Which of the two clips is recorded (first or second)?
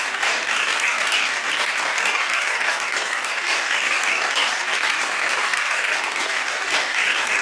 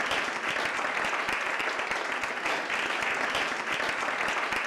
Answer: second